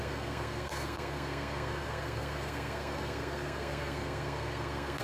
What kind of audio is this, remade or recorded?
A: remade